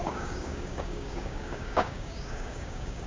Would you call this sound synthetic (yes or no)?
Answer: yes